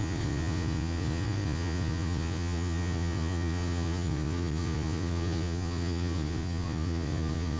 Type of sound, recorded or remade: remade